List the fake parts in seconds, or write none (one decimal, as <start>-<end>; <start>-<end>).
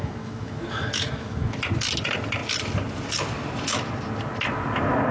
0.0-1.6